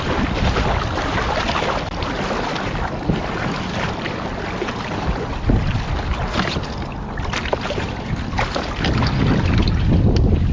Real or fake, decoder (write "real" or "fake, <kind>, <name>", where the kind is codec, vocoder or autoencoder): real